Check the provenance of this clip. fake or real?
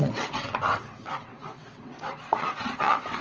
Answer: fake